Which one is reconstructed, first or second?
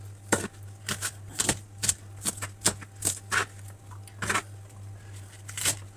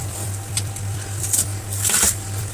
second